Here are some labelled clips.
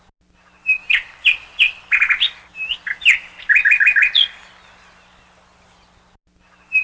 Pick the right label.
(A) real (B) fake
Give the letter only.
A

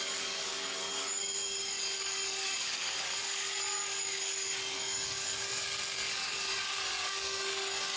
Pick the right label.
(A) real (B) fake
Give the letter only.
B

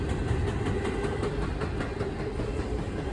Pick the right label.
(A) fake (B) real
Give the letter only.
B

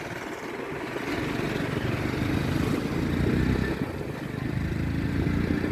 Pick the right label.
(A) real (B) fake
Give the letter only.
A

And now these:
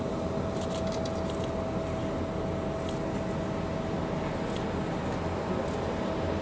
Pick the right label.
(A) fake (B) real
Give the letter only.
B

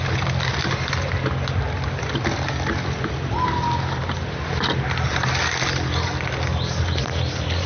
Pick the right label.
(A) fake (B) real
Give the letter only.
B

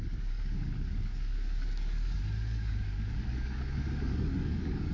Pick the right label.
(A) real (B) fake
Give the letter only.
B